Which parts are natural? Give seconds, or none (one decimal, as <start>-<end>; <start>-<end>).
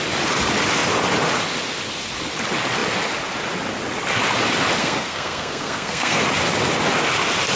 0.0-4.8; 6.2-7.6